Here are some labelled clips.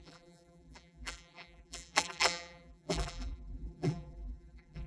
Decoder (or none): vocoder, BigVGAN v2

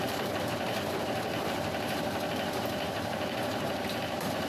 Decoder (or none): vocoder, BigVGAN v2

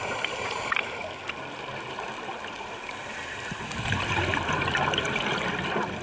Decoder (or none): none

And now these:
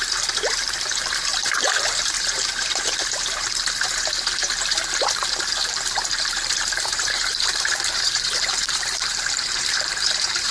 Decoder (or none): vocoder, BigVGAN v2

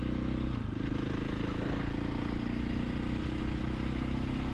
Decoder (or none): none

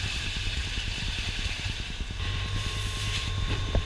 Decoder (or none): vocoder, BigVGAN v2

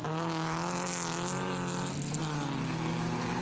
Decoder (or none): none